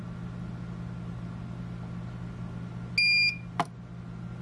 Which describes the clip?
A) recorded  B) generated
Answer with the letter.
A